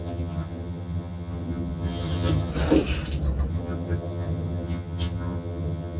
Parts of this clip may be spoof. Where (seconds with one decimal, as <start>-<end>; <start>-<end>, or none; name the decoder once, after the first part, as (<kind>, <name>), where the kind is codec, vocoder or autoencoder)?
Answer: 0.0-2.5 (vocoder, HiFi-GAN); 3.5-6.0